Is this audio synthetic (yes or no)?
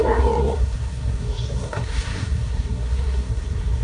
yes